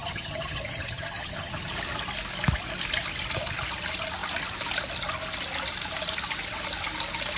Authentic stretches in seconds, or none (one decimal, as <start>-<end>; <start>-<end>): 1.7-7.4